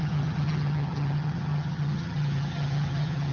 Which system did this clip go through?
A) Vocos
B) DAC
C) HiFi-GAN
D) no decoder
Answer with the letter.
C